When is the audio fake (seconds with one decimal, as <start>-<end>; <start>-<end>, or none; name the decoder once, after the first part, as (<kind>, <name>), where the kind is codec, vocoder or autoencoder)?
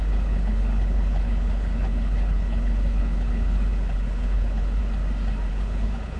0.0-4.8 (codec, HILCodec); 5.5-6.2